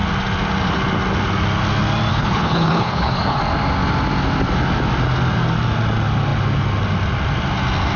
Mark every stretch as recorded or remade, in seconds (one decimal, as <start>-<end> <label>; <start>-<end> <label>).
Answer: 0.0-2.1 recorded; 2.1-3.4 remade; 3.4-8.0 recorded